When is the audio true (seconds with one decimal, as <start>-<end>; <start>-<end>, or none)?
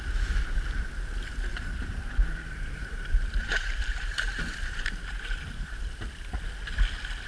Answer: 0.0-1.5; 5.9-7.3